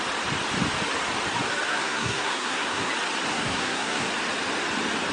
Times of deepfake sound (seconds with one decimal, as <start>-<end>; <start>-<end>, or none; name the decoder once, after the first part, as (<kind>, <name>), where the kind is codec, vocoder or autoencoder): 1.7-2.9 (codec, SNAC); 3.3-4.1